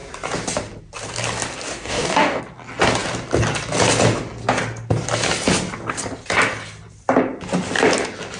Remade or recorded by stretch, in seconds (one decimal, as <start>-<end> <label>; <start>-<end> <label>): 0.0-1.7 recorded; 1.7-2.4 remade; 2.4-8.4 recorded